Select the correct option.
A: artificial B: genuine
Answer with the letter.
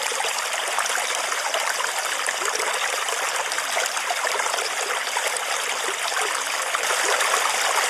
A